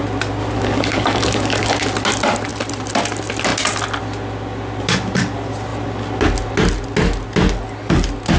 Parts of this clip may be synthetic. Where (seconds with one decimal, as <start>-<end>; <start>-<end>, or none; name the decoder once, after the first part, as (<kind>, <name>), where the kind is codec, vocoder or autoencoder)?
0.4-1.7 (codec, DAC)